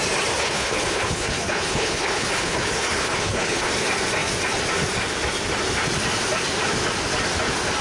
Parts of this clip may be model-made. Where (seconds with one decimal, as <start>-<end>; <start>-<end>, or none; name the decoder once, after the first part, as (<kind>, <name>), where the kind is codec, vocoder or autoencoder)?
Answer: 0.4-3.7 (codec, HILCodec)